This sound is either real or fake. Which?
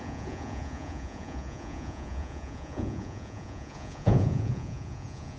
fake